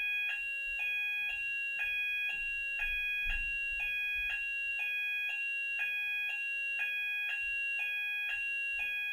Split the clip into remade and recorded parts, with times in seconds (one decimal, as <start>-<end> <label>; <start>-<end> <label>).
0.0-9.1 recorded